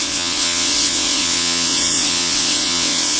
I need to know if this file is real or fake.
fake